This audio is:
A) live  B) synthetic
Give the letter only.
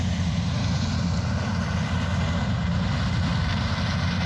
A